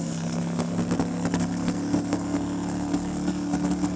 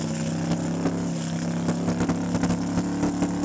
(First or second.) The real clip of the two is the second